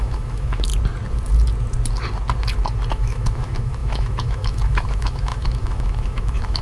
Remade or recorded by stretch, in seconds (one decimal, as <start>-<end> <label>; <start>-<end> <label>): 0.0-0.7 remade; 0.7-2.9 recorded; 2.9-6.6 remade